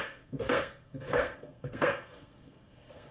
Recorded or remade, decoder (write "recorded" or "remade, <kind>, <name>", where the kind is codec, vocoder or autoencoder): remade, codec, SNAC